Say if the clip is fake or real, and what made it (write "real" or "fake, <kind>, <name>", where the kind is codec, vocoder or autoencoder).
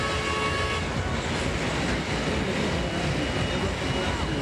real